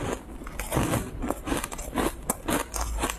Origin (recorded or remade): recorded